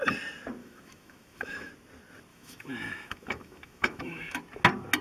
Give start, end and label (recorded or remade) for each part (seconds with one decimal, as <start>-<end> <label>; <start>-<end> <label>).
0.0-0.6 recorded; 0.6-1.7 remade; 1.7-2.3 recorded; 2.3-4.4 remade; 4.4-5.0 recorded